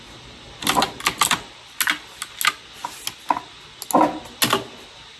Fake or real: real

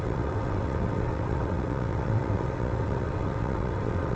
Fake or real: fake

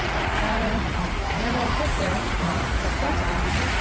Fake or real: fake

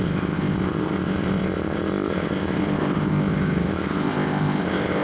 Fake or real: fake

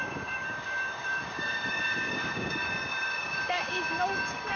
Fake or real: fake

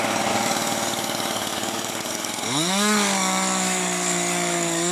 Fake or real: fake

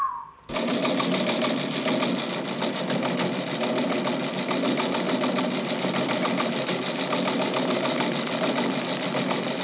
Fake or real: real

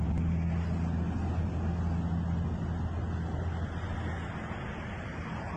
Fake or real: real